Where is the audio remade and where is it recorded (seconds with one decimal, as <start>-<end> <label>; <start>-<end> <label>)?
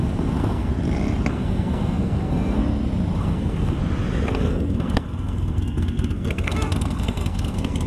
0.0-0.7 remade; 0.7-1.3 recorded; 1.3-2.6 remade; 2.6-3.2 recorded; 3.2-3.8 remade; 3.8-4.3 recorded; 4.3-7.9 remade